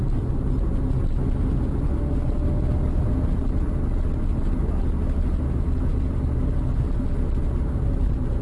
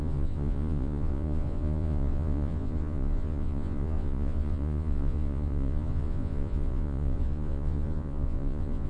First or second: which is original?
first